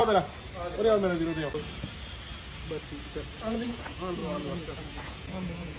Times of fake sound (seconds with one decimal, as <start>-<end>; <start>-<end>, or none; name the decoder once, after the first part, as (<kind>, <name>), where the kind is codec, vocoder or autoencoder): 3.5-5.8 (vocoder, Vocos)